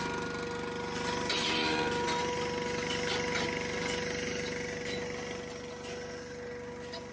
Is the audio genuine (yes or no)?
yes